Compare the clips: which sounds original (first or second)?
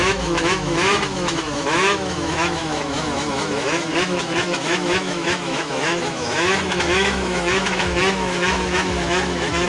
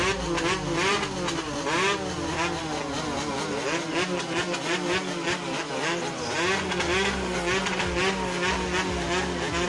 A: second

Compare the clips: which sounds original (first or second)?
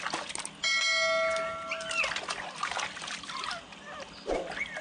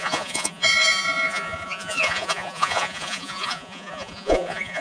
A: first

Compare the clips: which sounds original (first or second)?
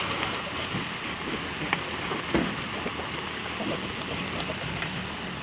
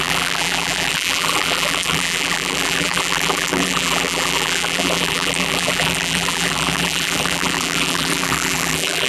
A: first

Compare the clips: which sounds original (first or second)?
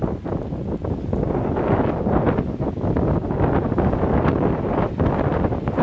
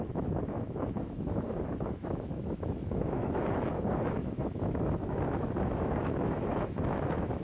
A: first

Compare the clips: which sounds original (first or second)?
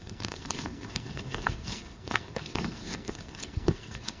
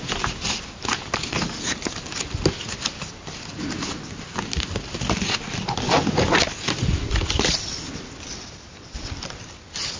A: second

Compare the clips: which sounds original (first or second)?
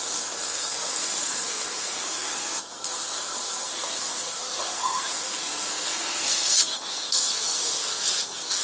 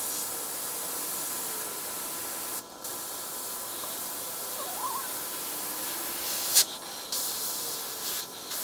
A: second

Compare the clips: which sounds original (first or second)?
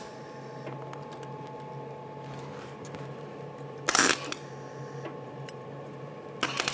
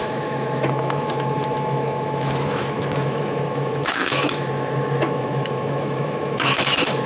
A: first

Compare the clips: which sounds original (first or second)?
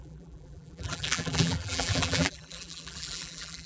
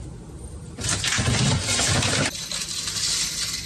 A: second